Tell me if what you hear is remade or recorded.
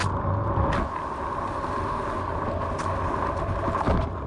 recorded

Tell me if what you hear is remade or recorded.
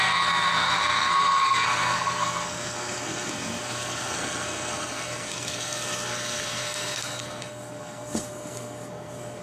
remade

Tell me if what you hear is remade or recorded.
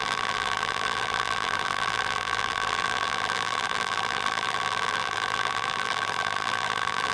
remade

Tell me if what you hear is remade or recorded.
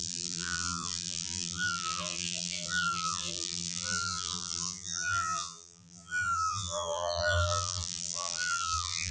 remade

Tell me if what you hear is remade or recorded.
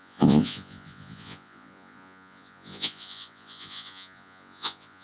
remade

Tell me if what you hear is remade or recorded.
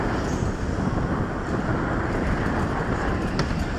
recorded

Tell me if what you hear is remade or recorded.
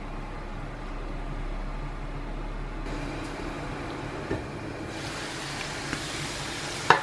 recorded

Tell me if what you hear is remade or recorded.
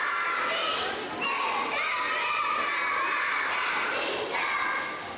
recorded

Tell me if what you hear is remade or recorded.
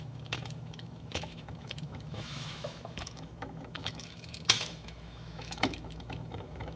remade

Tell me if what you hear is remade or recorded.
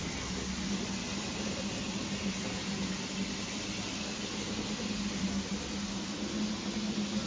recorded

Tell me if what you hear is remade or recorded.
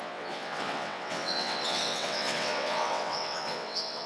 remade